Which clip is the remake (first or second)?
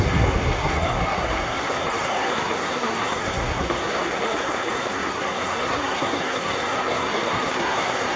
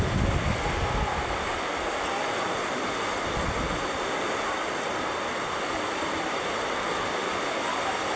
first